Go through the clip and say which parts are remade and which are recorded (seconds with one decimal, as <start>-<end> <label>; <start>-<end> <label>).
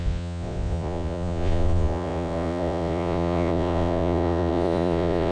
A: 0.0-5.3 remade